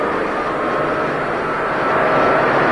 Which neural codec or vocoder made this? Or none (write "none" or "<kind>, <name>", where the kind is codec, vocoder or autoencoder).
none